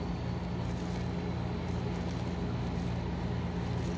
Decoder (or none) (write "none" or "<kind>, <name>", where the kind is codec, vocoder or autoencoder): none